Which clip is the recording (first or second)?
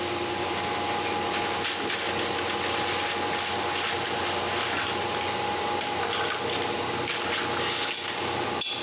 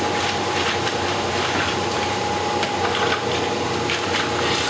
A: first